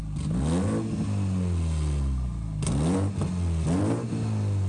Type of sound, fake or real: real